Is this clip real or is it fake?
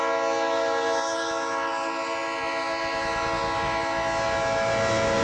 real